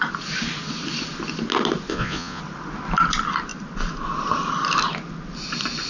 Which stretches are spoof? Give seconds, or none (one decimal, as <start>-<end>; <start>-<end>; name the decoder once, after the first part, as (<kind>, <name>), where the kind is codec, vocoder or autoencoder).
1.9-2.4 (vocoder, Vocos)